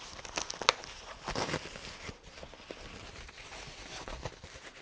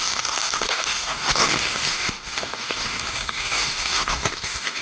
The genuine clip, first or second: first